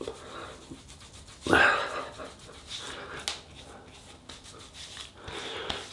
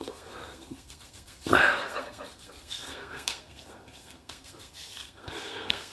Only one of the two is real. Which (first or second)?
first